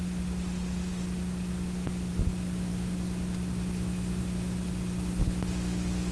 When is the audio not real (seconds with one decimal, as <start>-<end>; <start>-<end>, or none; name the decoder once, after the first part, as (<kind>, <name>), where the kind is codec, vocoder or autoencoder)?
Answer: none